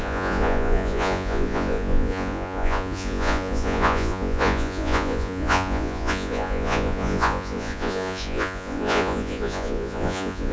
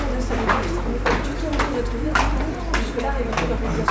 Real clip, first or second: second